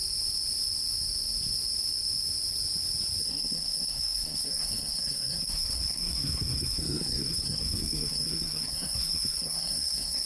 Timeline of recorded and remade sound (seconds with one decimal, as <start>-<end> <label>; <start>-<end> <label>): 0.0-3.2 recorded; 3.2-10.3 remade